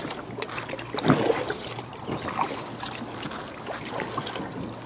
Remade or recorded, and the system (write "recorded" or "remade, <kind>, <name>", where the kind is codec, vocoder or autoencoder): recorded